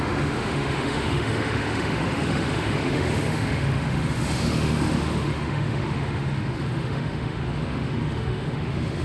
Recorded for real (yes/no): no